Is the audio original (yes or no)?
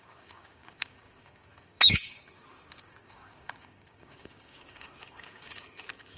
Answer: no